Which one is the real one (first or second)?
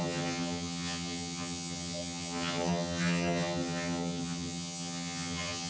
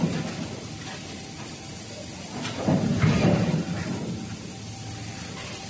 second